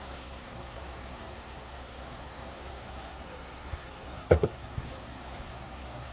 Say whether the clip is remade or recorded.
remade